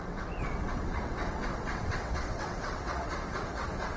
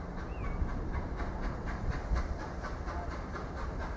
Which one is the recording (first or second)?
second